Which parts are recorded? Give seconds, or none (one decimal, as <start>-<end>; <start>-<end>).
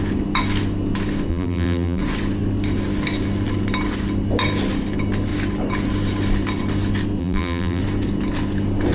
0.0-1.3; 2.0-7.2; 7.8-8.9